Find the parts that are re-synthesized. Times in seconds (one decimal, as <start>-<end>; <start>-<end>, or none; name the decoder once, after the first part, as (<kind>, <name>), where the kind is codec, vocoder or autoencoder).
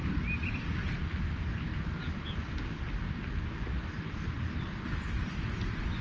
none